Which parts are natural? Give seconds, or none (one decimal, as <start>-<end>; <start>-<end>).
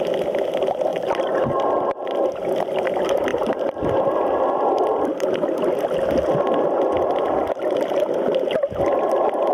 0.0-0.9; 1.6-3.3; 3.9-9.5